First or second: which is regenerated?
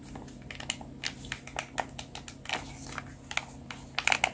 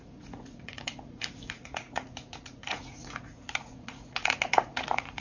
second